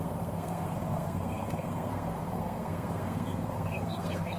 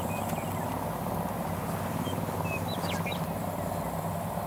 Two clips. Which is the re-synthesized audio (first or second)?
first